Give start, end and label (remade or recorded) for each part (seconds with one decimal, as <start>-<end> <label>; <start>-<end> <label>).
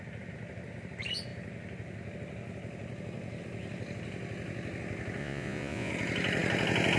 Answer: 0.0-5.2 recorded; 5.2-5.9 remade; 5.9-7.0 recorded